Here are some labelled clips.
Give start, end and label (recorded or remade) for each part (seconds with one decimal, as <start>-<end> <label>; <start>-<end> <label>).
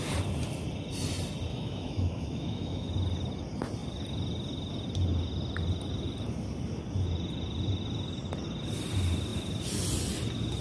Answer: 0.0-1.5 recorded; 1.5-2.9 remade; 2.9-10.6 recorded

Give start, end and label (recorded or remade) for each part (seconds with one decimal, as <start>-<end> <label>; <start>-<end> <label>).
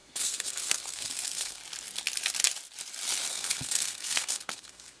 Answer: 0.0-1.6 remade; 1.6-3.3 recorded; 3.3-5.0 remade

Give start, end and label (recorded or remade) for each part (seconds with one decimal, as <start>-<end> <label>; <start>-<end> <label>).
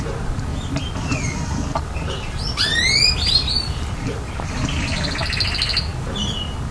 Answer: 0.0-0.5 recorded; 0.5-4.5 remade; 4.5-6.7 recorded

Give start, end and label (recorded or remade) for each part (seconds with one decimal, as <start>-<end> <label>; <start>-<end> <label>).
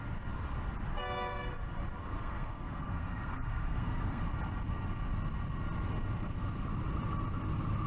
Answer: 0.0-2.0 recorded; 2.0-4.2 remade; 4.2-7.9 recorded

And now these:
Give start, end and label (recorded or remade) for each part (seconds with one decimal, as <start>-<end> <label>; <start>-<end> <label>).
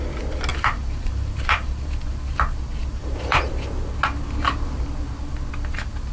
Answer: 0.0-0.5 recorded; 0.5-1.9 remade; 1.9-2.9 recorded; 2.9-3.5 remade; 3.5-6.1 recorded